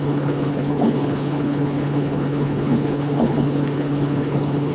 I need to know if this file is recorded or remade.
remade